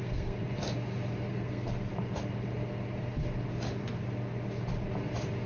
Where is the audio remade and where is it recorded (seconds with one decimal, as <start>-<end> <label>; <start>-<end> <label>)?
0.0-0.4 remade; 0.4-1.3 recorded; 1.3-1.9 remade; 1.9-5.5 recorded